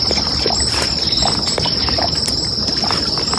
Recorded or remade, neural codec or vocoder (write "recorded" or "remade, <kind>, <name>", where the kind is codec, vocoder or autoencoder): recorded